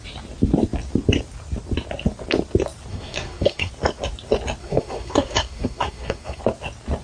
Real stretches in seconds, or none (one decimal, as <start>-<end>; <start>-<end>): 0.0-2.9; 3.7-4.6; 6.4-7.0